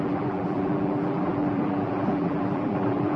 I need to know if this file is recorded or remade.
remade